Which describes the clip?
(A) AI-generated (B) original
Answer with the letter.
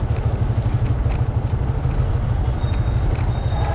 B